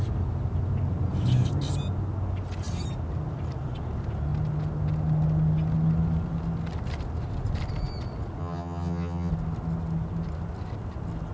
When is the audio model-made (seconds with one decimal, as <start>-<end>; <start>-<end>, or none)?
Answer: 8.4-9.3